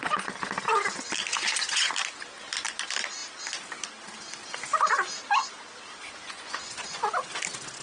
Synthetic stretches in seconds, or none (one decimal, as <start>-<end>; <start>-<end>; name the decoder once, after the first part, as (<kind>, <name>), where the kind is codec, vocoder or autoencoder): 1.3-1.9 (vocoder, Vocos); 6.2-7.1